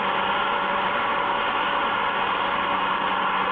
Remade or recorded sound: recorded